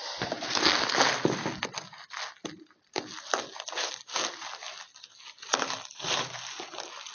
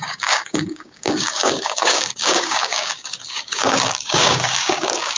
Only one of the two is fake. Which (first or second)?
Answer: second